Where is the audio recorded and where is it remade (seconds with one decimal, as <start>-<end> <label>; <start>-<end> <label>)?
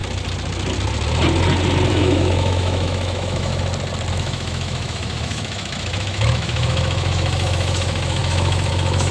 0.0-1.9 recorded; 1.9-3.5 remade; 3.5-4.1 recorded; 4.1-9.1 remade